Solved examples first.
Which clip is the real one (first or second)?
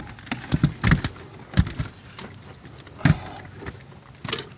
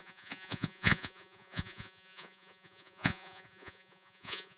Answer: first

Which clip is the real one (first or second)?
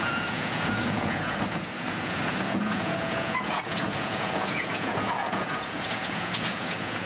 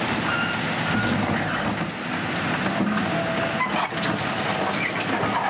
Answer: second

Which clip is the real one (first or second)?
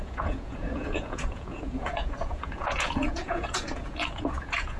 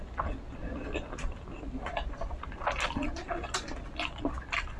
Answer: second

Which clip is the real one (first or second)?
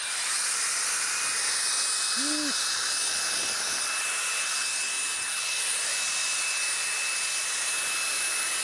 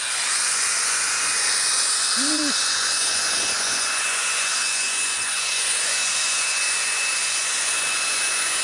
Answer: first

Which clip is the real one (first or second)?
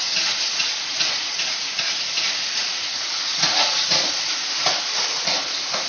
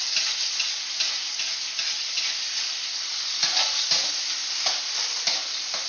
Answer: second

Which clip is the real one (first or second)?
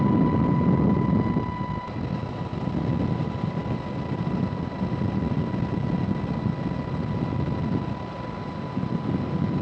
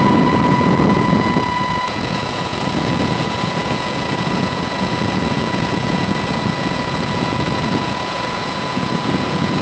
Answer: first